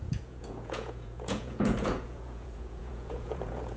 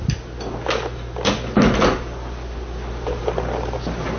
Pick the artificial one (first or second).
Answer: first